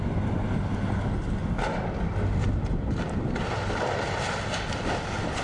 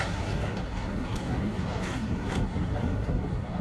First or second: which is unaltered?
first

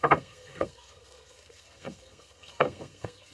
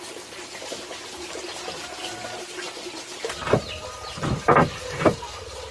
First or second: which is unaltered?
second